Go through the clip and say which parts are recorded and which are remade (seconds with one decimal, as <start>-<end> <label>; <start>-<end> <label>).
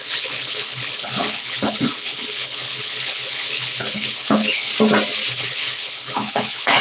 0.0-4.7 remade; 4.7-5.3 recorded; 5.3-6.8 remade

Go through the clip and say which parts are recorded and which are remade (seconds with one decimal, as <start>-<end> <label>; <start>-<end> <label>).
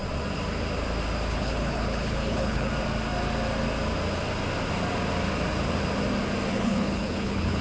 0.0-1.3 recorded; 1.3-2.7 remade; 2.7-6.5 recorded; 6.5-7.6 remade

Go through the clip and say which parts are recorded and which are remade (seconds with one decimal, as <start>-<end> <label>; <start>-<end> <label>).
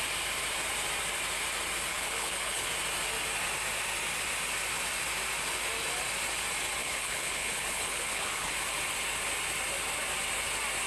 0.0-1.9 recorded; 1.9-2.7 remade; 2.7-6.8 recorded; 6.8-8.5 remade; 8.5-10.9 recorded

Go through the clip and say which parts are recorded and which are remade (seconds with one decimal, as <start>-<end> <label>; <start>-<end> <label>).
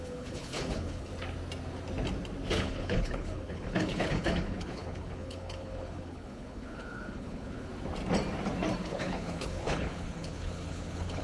0.0-1.1 remade; 1.1-2.5 recorded; 2.5-7.7 remade; 7.7-8.8 recorded; 8.8-11.2 remade